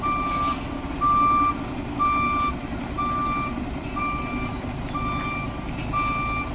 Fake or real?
real